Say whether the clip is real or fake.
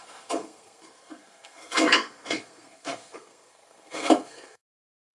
fake